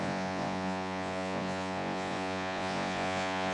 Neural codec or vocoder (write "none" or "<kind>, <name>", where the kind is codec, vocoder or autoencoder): vocoder, Vocos